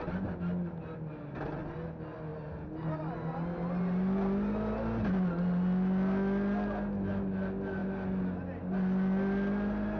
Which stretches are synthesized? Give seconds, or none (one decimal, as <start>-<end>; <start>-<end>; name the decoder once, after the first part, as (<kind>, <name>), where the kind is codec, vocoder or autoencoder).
none